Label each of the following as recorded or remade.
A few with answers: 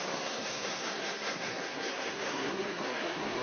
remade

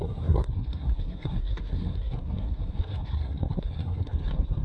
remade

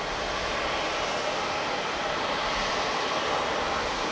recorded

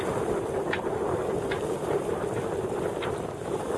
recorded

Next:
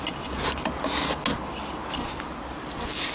recorded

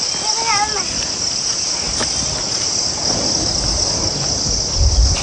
recorded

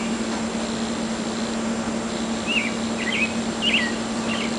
recorded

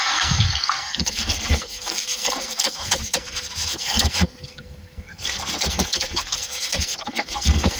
remade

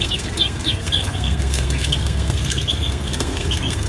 remade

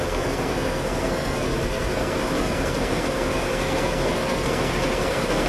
remade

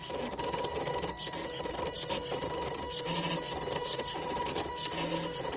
recorded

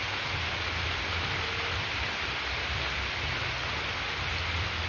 recorded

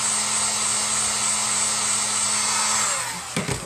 recorded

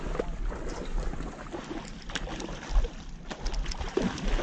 recorded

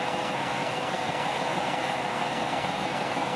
remade